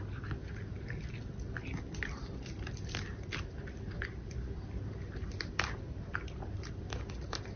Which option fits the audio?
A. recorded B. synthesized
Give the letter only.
A